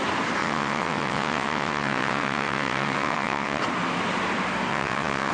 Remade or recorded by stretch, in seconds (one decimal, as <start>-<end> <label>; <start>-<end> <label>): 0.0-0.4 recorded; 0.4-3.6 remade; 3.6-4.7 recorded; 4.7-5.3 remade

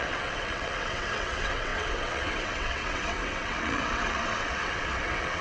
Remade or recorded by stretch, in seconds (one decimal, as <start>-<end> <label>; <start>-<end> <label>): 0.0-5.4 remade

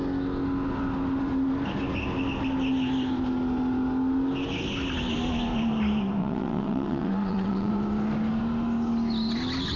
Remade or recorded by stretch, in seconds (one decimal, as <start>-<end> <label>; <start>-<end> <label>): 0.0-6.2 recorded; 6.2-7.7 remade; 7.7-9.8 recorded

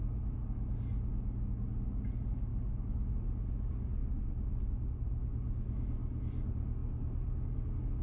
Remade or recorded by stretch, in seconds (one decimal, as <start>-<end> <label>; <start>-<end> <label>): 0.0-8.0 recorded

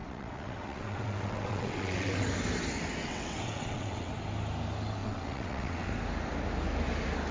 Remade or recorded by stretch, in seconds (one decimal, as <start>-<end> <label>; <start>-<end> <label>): 0.0-2.3 remade; 2.3-3.0 recorded; 3.0-4.1 remade; 4.1-5.0 recorded; 5.0-5.9 remade; 5.9-7.3 recorded

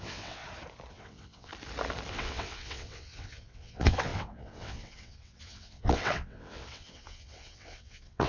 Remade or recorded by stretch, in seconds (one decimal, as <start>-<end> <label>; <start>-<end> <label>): 0.0-0.4 remade; 0.4-0.9 recorded; 0.9-1.5 remade; 1.5-2.1 recorded; 2.1-8.3 remade

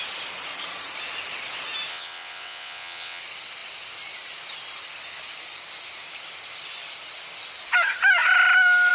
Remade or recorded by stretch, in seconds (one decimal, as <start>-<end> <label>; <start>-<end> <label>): 0.0-1.9 recorded; 1.9-3.2 remade; 3.2-8.9 recorded